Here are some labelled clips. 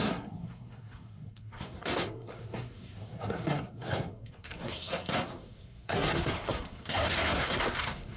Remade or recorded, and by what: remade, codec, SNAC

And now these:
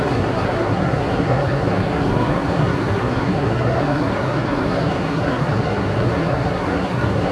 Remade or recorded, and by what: remade, codec, SNAC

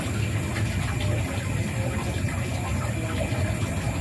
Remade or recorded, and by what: recorded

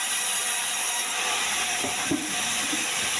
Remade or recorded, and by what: recorded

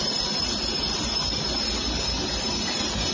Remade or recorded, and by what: recorded